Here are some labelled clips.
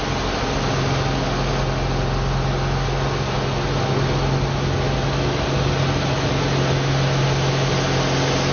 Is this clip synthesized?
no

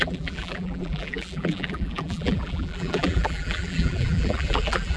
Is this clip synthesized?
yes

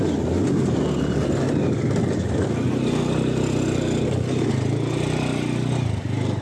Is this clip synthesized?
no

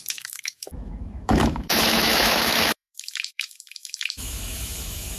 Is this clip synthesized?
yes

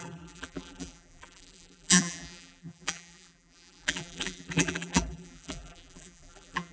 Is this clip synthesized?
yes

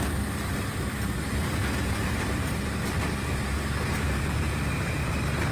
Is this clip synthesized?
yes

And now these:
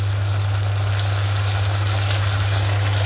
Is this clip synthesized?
no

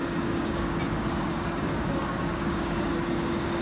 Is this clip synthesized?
yes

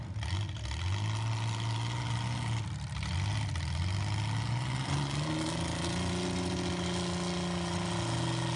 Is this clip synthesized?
no